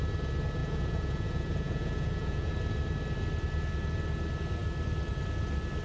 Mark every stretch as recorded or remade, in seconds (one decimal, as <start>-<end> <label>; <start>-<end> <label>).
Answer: 0.0-0.6 recorded; 0.6-2.5 remade; 2.5-5.8 recorded